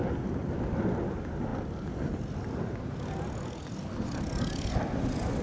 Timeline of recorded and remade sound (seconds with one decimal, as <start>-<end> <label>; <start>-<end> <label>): 0.0-5.4 recorded